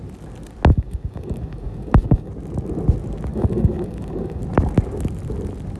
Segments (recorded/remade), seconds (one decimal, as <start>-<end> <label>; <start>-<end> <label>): 0.0-0.7 recorded; 0.7-2.3 remade; 2.3-3.3 recorded; 3.3-4.4 remade; 4.4-5.8 recorded

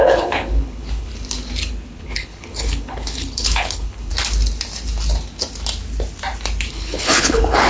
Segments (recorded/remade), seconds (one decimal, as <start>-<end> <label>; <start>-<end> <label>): 0.0-1.1 remade; 1.1-2.0 recorded; 2.0-4.1 remade; 4.1-6.7 recorded; 6.7-7.7 remade

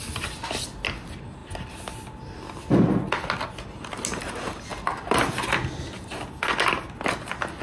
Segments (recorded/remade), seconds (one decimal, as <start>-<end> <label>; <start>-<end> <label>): 0.0-7.6 recorded

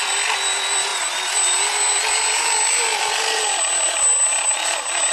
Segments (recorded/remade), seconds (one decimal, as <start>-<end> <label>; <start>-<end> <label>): 0.0-5.1 recorded

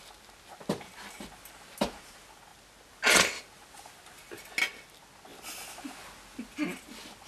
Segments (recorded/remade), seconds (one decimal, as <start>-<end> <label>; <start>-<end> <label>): 0.0-7.3 recorded

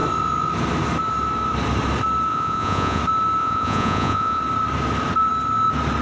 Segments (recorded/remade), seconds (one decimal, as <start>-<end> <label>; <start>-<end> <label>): 0.0-2.3 recorded; 2.3-3.0 remade; 3.0-3.4 recorded; 3.4-4.4 remade; 4.4-6.0 recorded

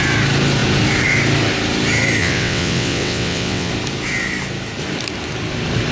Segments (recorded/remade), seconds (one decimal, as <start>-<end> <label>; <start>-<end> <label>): 0.0-2.2 recorded; 2.2-3.7 remade; 3.7-5.9 recorded

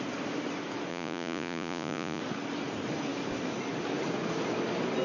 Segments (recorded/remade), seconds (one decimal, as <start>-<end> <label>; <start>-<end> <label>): 0.0-0.9 recorded; 0.9-2.2 remade; 2.2-5.0 recorded